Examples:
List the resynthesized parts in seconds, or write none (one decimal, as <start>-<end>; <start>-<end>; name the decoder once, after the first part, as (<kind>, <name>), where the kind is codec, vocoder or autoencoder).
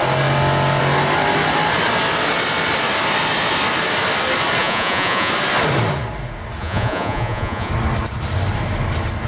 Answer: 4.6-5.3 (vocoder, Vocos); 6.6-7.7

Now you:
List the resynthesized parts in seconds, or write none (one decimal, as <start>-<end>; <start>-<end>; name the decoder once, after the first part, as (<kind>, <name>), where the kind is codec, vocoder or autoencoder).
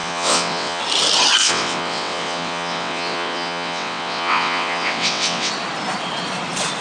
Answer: 0.0-0.8 (vocoder, WaveNeXt); 1.4-5.5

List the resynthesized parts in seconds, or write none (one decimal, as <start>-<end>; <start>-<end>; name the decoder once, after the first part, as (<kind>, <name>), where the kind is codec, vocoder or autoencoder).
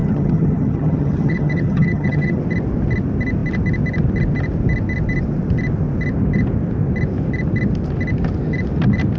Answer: 0.0-2.4 (vocoder, HiFi-GAN)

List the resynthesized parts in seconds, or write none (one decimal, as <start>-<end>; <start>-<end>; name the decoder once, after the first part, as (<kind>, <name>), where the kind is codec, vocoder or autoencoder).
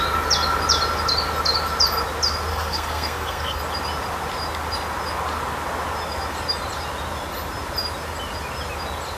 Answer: 2.5-3.6 (codec, SNAC)